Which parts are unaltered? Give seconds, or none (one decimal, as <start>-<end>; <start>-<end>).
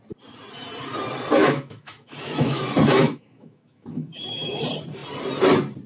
0.0-1.4; 2.6-3.0; 4.6-5.9